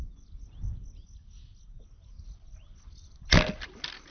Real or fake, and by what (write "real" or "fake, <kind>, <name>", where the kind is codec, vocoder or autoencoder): real